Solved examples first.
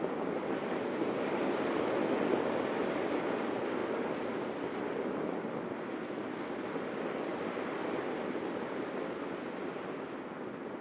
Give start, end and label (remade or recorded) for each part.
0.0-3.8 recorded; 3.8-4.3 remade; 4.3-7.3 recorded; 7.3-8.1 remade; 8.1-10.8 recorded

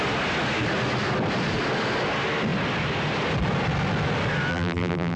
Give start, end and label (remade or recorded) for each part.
0.0-4.5 recorded; 4.5-5.2 remade

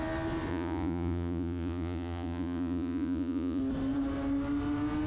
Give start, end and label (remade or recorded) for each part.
0.0-0.5 recorded; 0.5-3.6 remade; 3.6-5.1 recorded

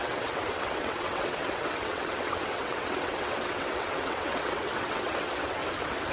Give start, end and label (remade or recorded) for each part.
0.0-5.6 remade; 5.6-6.1 recorded

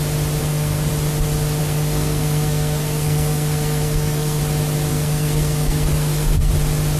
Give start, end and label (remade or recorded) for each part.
0.0-0.4 recorded; 0.4-0.9 remade; 0.9-1.6 recorded; 1.6-4.4 remade; 4.4-4.9 recorded; 4.9-6.5 remade; 6.5-7.0 recorded

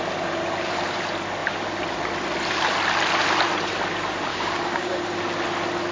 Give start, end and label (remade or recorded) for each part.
0.0-4.3 recorded; 4.3-5.0 remade; 5.0-5.9 recorded

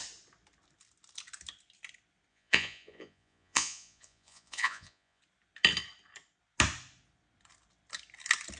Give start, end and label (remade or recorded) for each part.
0.0-2.3 recorded; 2.3-5.2 remade; 5.2-8.6 recorded